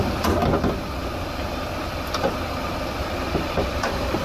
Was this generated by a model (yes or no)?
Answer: no